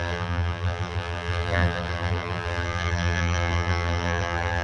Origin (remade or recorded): remade